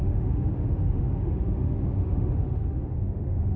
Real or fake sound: fake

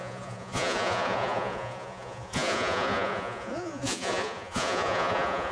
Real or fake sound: fake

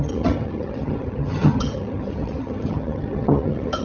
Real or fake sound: fake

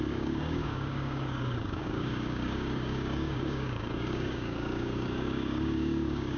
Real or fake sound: fake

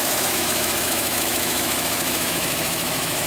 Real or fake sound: fake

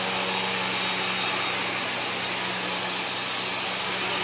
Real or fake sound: real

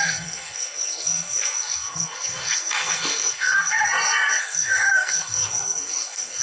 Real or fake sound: fake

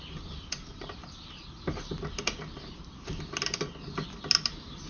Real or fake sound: real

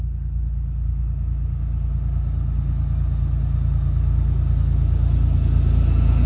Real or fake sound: real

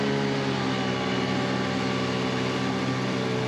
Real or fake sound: real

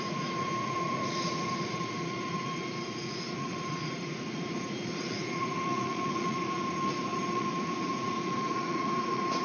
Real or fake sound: fake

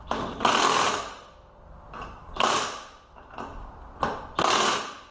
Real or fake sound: real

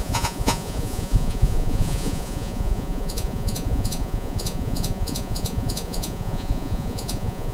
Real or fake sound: fake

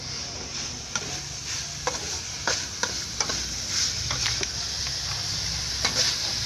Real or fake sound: real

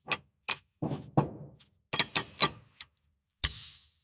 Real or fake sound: real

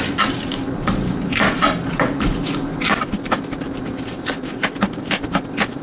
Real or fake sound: fake